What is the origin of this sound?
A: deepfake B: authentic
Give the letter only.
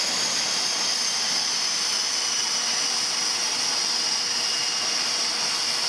B